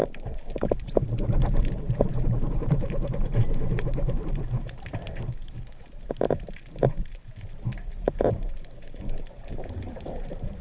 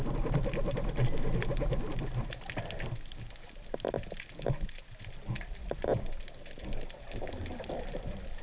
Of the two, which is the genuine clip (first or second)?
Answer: second